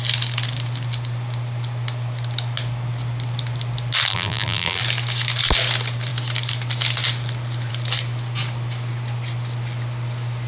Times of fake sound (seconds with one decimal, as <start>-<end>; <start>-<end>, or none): 4.1-4.8